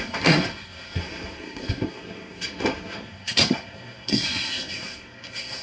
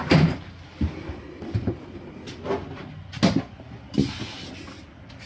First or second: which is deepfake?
first